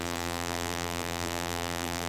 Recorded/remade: remade